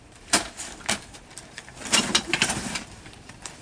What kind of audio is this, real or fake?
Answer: fake